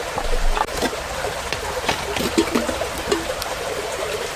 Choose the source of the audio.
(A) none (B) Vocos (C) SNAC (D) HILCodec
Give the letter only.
A